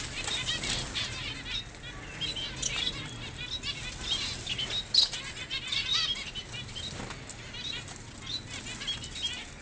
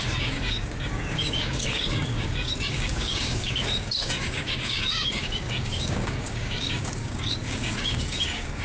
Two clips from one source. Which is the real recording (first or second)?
first